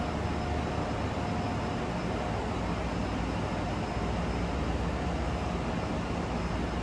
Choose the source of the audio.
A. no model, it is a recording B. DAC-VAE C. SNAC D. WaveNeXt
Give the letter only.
A